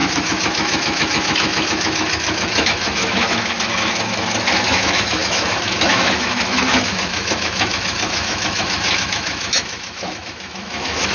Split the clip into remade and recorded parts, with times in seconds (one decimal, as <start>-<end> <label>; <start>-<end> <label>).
0.0-11.1 remade